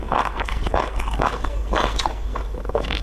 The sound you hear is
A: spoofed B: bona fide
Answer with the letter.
A